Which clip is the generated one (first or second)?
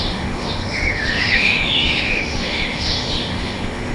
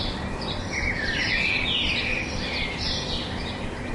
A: first